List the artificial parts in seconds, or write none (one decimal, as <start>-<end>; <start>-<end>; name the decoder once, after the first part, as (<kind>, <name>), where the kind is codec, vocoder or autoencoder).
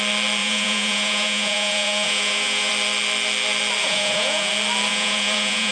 0.4-2.7 (vocoder, Vocos); 3.8-4.5; 4.9-5.7